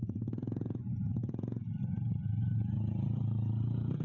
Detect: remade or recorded remade